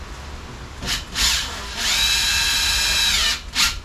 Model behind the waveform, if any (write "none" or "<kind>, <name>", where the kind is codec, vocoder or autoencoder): none